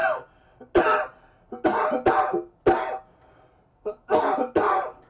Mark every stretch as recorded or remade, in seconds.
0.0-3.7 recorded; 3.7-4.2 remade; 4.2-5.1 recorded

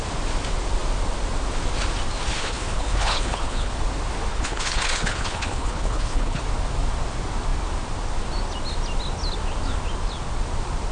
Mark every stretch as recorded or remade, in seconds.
0.0-2.3 recorded; 2.3-3.7 remade; 3.7-4.3 recorded; 4.3-6.4 remade; 6.4-10.9 recorded

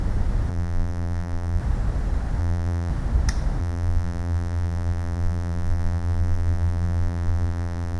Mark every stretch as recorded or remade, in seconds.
0.0-0.5 recorded; 0.5-1.6 remade; 1.6-2.4 recorded; 2.4-2.9 remade; 2.9-3.6 recorded; 3.6-8.0 remade